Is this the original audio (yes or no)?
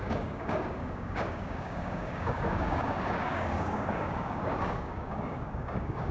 no